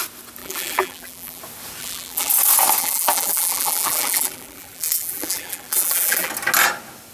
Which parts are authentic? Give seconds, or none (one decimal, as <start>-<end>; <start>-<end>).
0.0-0.4; 1.4-1.8; 2.3-2.8; 6.3-7.1